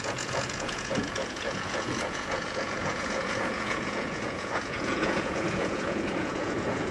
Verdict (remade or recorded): remade